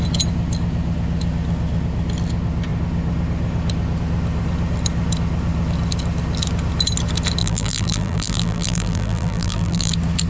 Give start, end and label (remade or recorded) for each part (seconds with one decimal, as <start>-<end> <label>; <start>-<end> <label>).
0.0-7.4 recorded; 7.4-9.9 remade; 9.9-10.3 recorded